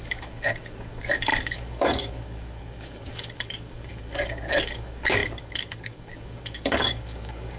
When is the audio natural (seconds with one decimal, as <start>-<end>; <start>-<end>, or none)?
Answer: none